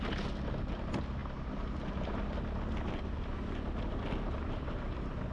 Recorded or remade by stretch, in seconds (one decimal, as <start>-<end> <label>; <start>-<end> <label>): 0.0-5.3 recorded